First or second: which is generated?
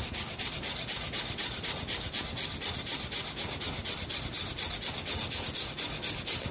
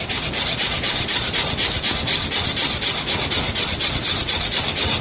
second